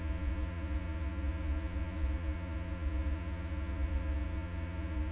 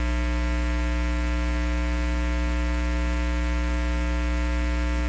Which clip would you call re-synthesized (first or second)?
first